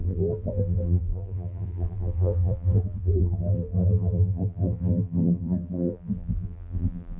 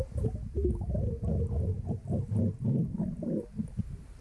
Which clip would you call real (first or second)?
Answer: second